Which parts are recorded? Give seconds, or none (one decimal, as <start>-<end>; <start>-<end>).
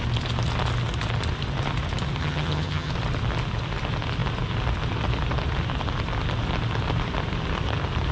0.0-2.2; 2.9-8.1